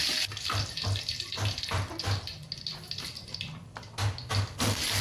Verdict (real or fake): real